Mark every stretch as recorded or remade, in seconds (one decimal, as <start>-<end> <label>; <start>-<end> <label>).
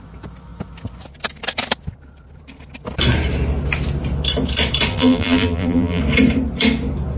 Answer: 0.0-4.9 recorded; 4.9-6.0 remade; 6.0-7.2 recorded